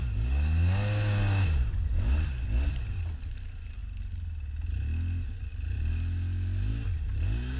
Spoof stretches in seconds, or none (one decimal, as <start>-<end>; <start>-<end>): none